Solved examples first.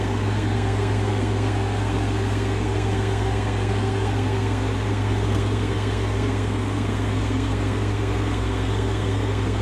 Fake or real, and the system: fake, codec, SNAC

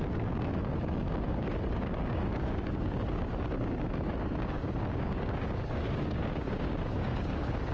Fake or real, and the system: fake, codec, DAC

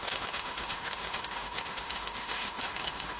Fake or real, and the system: fake, autoencoder, DAC-VAE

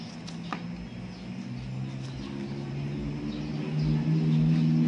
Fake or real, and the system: real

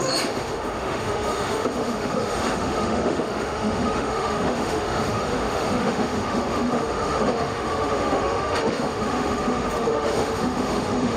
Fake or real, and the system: fake, autoencoder, DAC-VAE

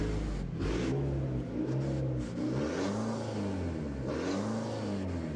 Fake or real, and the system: real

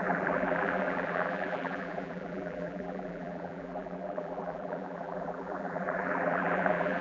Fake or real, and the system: fake, vocoder, BigVGAN v2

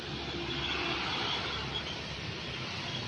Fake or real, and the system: real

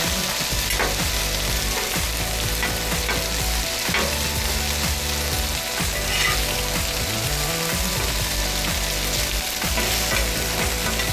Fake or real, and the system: real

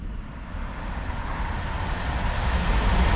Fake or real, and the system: real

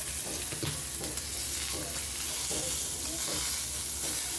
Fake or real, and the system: real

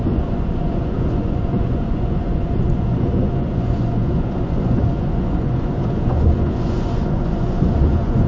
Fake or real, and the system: fake, vocoder, Vocos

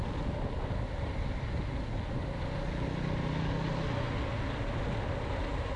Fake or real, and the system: real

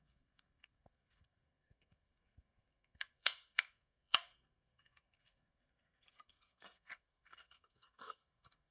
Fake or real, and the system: fake, codec, SNAC